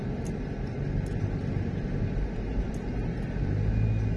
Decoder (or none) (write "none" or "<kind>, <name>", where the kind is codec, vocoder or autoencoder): none